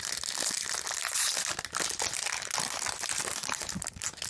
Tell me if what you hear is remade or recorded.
recorded